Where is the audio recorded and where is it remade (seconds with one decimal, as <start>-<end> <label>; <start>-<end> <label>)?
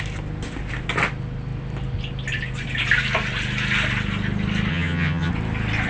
0.0-4.7 recorded; 4.7-5.3 remade; 5.3-5.9 recorded